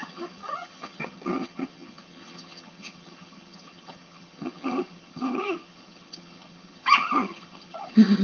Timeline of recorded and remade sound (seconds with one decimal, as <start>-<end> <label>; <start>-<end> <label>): 0.0-8.2 remade